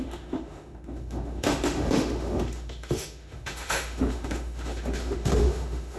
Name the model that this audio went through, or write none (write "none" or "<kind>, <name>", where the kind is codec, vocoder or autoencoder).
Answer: autoencoder, DAC-VAE